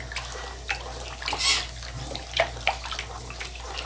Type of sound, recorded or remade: recorded